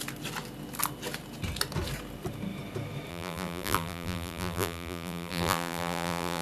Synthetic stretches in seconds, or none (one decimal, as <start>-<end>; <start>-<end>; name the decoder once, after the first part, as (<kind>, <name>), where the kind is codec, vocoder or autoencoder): 3.1-6.4 (vocoder, BigVGAN v2)